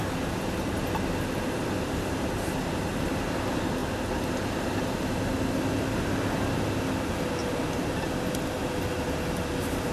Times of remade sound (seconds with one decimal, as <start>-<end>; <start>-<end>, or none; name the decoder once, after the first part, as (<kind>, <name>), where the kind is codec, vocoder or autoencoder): none